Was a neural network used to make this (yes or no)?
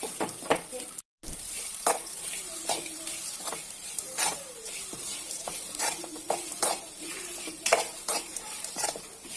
yes